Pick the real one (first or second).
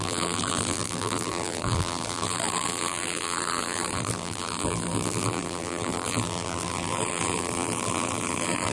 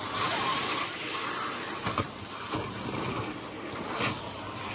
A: second